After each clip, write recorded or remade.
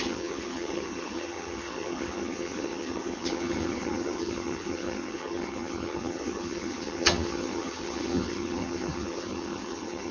remade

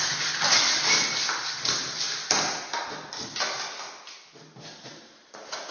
recorded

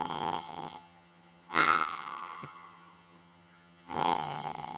remade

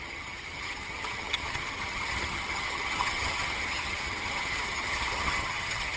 remade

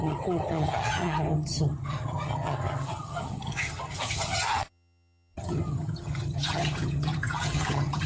remade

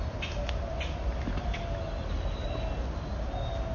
recorded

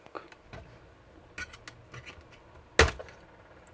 recorded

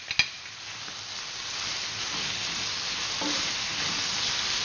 recorded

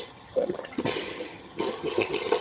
remade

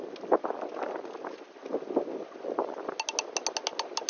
recorded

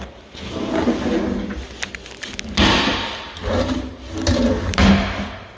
recorded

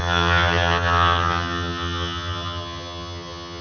remade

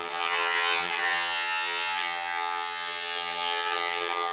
remade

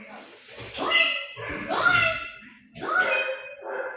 recorded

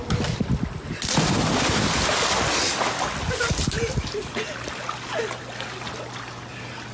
recorded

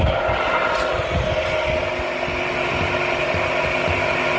recorded